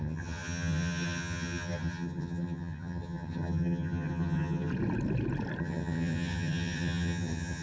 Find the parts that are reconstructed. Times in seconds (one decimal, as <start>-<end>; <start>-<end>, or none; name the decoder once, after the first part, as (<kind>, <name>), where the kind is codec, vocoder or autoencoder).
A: 0.0-4.7 (vocoder, HiFi-GAN); 5.6-7.6